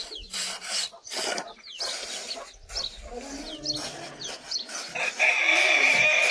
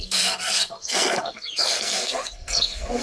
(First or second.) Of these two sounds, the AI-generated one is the second